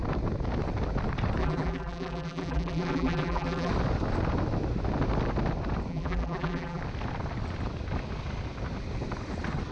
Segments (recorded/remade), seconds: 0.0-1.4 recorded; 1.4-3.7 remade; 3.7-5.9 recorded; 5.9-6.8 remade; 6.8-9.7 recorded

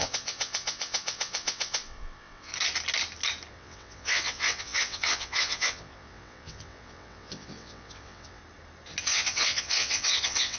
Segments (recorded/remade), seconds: 0.0-2.5 remade; 2.5-3.5 recorded; 3.5-8.4 remade; 8.4-9.0 recorded; 9.0-10.6 remade